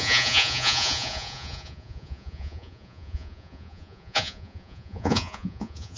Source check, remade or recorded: remade